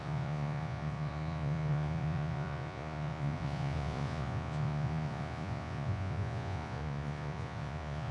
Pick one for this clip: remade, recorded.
remade